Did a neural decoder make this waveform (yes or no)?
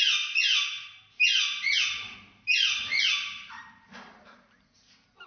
no